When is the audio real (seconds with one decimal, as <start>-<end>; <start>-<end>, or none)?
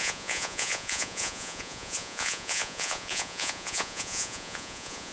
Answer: none